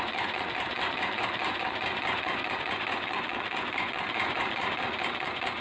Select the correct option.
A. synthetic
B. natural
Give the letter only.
A